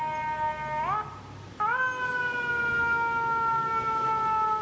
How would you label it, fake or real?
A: real